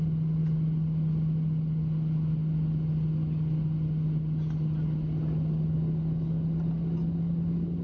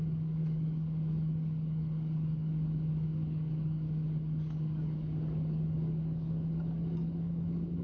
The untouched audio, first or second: first